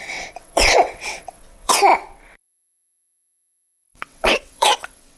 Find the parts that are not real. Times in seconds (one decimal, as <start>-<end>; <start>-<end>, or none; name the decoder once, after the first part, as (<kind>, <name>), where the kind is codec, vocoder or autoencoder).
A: 0.0-5.2 (vocoder, WaveNeXt)